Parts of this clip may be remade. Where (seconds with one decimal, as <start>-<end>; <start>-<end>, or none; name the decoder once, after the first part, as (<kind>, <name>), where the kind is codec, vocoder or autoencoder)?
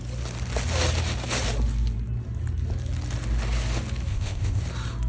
4.1-4.6 (codec, ZipCodec)